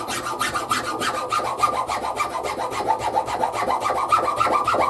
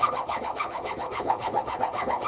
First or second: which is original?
first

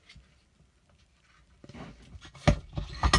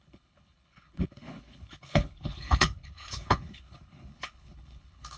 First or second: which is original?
first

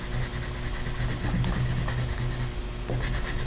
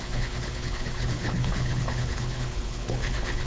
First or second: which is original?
first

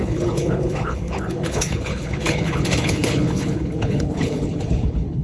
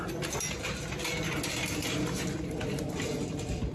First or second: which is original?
second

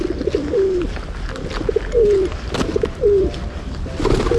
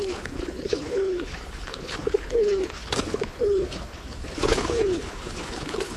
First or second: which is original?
first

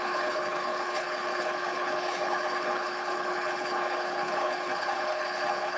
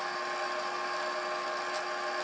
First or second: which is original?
second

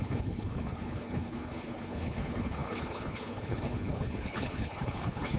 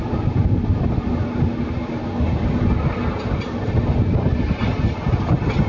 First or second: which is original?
second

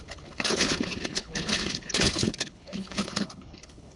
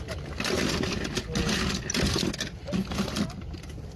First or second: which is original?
second